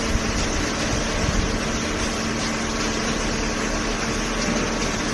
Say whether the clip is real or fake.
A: real